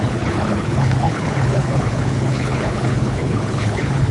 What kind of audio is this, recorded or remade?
remade